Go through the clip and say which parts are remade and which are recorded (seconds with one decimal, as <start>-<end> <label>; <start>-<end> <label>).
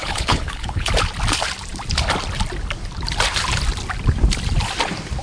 0.0-0.9 remade; 0.9-5.2 recorded